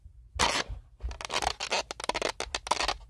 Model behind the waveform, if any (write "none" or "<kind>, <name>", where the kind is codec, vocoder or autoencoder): none